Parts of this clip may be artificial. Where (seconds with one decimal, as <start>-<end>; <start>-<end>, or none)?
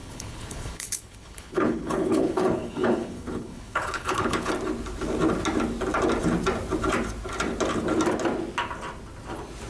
0.0-4.5